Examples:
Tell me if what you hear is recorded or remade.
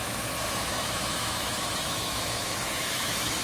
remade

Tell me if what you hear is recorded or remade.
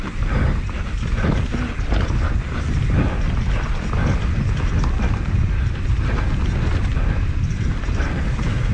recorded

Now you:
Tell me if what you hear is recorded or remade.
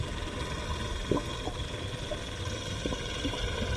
recorded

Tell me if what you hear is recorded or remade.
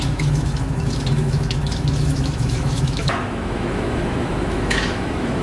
remade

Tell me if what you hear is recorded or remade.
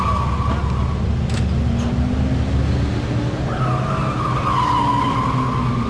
recorded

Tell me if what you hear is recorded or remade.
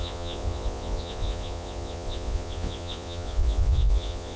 remade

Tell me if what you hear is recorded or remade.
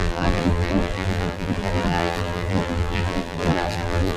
remade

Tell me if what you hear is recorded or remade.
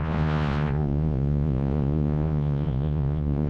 remade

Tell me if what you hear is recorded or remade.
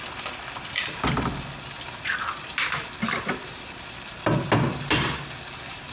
recorded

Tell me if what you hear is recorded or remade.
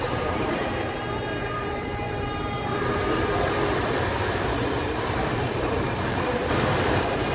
remade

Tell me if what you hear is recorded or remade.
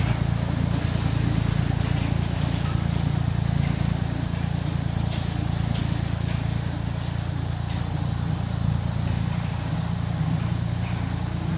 recorded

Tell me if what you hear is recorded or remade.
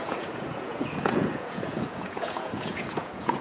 remade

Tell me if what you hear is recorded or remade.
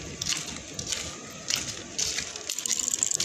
recorded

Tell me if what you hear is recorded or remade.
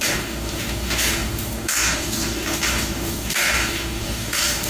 remade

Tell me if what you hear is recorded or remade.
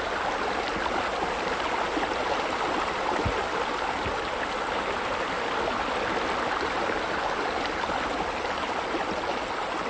recorded